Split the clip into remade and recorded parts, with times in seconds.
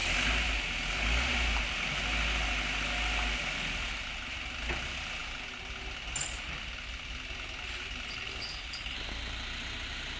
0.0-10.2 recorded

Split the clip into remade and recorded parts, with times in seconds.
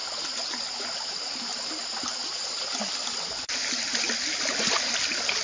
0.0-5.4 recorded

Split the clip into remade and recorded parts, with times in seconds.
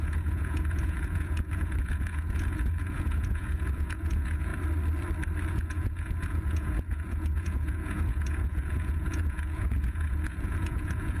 0.0-4.5 remade; 4.5-5.5 recorded; 5.5-11.2 remade